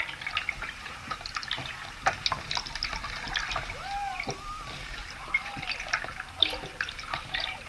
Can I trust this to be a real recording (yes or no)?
yes